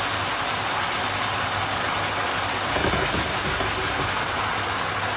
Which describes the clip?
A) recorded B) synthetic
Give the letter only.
A